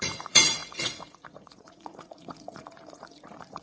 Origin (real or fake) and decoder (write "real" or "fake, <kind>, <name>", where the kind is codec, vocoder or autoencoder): fake, vocoder, Vocos